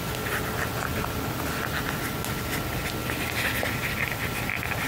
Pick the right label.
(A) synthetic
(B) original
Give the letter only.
B